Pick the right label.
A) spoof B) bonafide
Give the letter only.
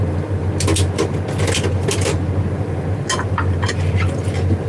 B